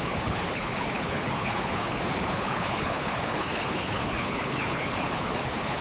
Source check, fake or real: fake